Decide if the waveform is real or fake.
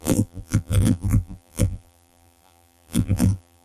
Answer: fake